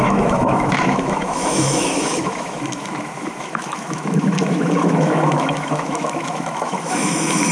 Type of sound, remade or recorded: remade